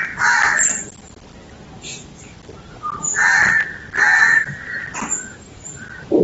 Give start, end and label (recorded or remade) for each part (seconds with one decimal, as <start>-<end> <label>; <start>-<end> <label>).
0.0-6.2 recorded